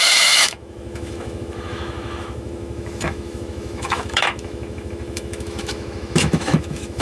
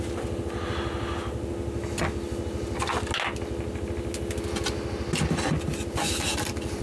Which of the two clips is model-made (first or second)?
first